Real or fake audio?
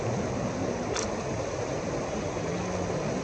real